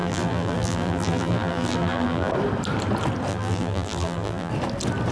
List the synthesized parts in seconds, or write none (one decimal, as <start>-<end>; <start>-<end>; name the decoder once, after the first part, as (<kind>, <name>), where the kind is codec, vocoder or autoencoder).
0.0-2.3 (vocoder, BigVGAN v2); 3.3-4.5